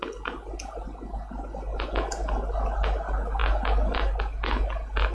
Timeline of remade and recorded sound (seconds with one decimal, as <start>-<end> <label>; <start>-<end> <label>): 0.0-5.1 recorded